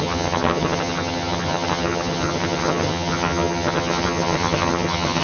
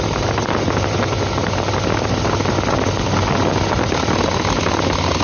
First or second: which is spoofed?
first